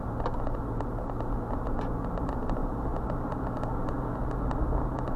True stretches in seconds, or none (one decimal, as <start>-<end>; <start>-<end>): 0.0-2.6; 3.4-5.2